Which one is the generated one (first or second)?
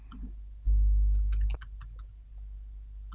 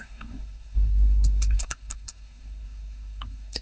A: second